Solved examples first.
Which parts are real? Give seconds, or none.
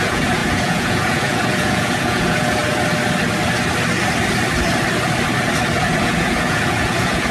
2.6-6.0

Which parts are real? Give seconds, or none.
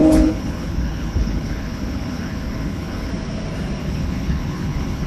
3.1-3.8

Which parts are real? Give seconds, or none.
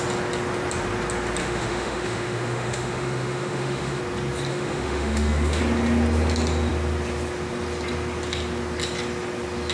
0.0-1.4; 4.0-4.5; 5.6-9.7